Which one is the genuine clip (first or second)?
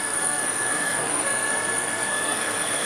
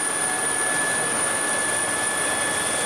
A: second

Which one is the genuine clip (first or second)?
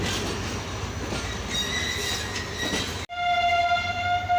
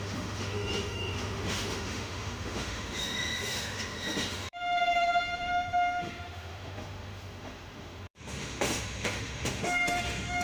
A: first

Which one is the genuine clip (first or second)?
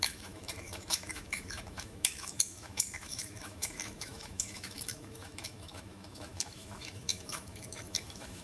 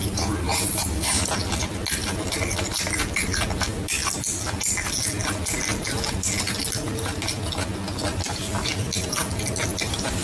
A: second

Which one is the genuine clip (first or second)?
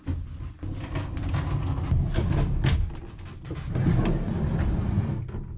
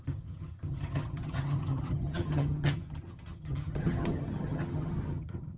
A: first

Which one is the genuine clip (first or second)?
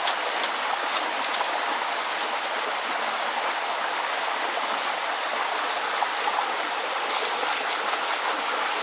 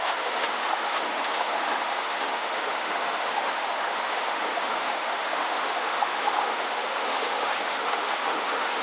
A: first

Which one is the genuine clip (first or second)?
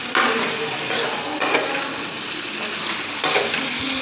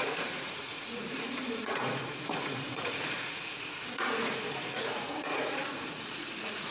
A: first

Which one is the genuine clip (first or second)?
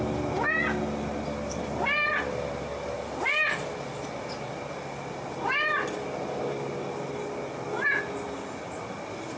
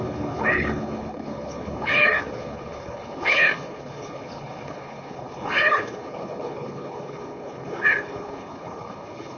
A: first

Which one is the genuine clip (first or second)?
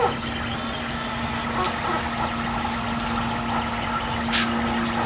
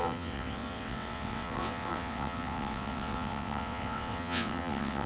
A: first